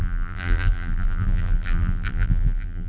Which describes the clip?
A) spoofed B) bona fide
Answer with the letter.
A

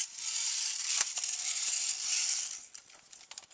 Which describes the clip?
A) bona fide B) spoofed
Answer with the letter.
B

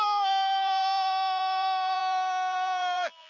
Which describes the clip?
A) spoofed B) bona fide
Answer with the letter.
A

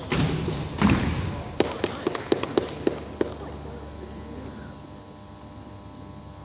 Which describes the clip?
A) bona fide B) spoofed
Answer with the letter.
A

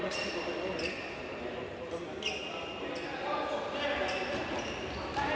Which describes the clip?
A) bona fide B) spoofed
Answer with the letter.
A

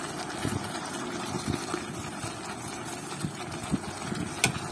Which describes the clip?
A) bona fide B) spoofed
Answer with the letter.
A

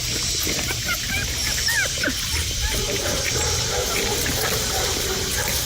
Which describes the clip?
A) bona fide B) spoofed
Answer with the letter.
A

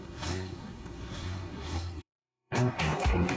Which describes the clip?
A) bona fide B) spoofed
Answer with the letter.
B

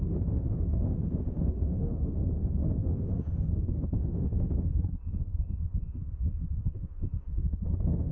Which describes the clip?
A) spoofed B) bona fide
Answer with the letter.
A